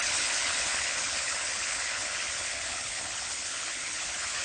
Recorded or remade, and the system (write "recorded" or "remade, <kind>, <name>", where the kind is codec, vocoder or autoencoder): remade, codec, HILCodec